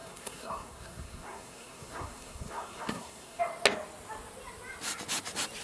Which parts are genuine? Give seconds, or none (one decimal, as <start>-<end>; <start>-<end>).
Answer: 3.4-5.6

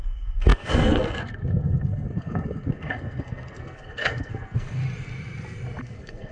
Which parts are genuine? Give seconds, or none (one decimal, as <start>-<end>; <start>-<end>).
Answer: 4.8-5.8

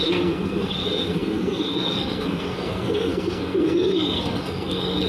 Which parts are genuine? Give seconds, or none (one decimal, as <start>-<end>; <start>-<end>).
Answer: none

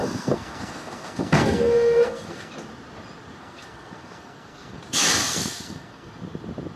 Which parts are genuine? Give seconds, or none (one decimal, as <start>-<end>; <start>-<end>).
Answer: 2.5-3.4; 4.8-5.2; 6.1-6.8

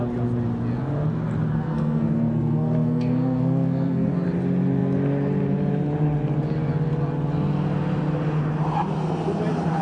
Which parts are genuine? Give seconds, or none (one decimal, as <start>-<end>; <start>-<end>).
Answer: 0.0-1.5; 4.1-9.8